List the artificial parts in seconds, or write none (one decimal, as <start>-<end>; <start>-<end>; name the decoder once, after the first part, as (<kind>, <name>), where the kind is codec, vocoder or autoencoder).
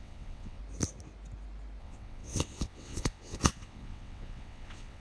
0.0-0.6 (vocoder, WaveNeXt); 1.8-5.0